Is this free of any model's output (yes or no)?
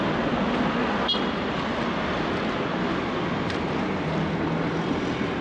yes